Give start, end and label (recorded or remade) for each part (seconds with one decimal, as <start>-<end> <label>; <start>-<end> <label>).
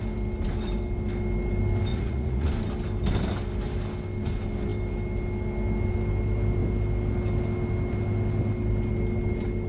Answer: 0.0-1.9 recorded; 1.9-2.5 remade; 2.5-9.7 recorded